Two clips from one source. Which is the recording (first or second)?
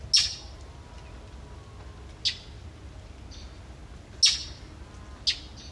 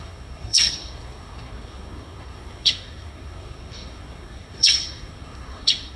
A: first